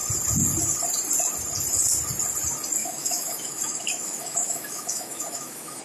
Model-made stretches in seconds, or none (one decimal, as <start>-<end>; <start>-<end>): 2.8-5.8